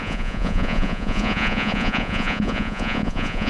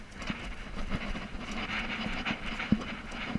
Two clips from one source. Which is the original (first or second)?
second